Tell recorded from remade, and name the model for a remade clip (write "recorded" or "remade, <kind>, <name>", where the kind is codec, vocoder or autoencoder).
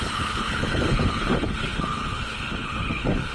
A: remade, codec, HILCodec